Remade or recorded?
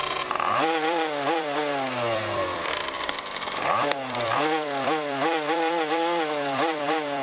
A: remade